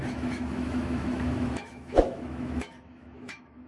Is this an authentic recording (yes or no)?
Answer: no